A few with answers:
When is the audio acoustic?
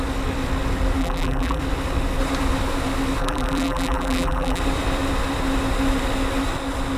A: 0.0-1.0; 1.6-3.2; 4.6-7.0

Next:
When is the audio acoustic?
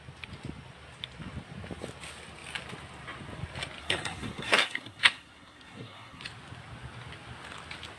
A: 0.0-3.8; 6.2-8.0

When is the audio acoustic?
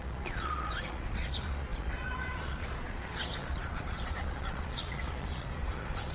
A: none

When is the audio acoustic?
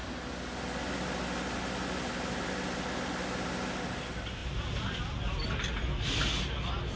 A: 0.0-7.0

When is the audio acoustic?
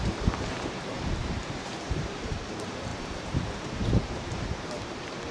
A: 2.9-3.5